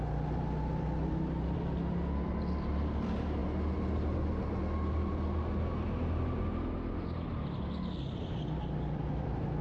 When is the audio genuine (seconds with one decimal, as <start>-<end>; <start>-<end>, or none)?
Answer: 0.0-9.6